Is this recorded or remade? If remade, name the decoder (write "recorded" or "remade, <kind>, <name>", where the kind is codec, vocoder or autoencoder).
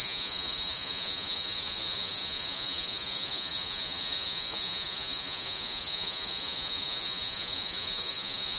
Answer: remade, vocoder, Vocos